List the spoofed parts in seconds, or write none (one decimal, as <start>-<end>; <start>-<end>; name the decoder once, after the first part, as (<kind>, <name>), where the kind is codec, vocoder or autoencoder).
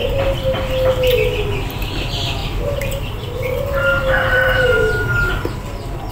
2.4-5.3 (vocoder, BigVGAN v2)